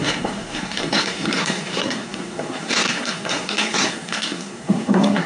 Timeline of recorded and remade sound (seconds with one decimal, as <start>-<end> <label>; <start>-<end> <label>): 0.0-5.3 remade